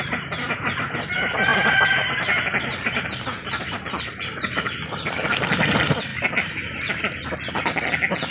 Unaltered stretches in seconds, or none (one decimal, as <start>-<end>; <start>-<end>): 0.0-1.5; 5.3-6.1; 6.9-8.3